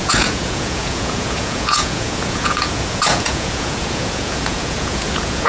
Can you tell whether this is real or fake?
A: fake